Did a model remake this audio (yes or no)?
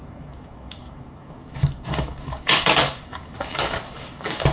yes